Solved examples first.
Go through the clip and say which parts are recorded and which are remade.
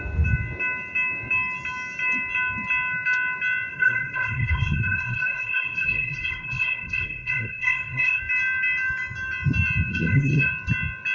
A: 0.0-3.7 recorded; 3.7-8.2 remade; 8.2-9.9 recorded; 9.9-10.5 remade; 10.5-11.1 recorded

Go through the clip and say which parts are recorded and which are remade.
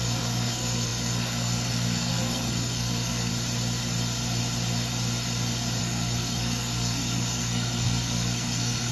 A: 0.0-3.3 remade; 3.3-5.8 recorded; 5.8-8.9 remade